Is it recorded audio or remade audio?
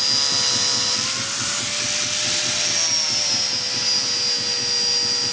recorded